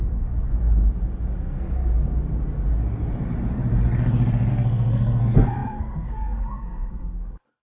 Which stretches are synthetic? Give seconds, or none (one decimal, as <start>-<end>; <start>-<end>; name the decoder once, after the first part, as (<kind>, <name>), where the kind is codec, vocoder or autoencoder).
0.0-0.5 (codec, SNAC); 1.4-1.8; 4.5-7.6

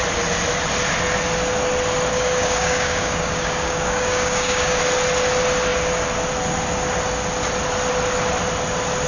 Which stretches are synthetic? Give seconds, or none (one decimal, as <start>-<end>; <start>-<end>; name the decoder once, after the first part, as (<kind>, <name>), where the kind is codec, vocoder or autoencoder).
2.1-4.8 (codec, DAC)

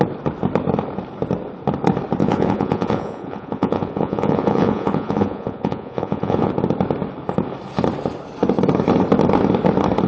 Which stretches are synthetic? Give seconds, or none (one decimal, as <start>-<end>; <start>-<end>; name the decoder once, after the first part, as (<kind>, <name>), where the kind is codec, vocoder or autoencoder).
2.2-6.5 (vocoder, Vocos)